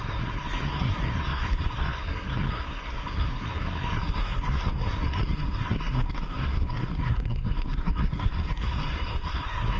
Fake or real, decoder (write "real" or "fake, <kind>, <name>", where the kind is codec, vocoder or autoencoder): fake, codec, SNAC